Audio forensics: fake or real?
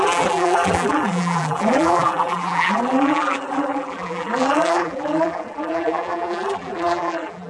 fake